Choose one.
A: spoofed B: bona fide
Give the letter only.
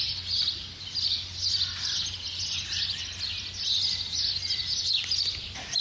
B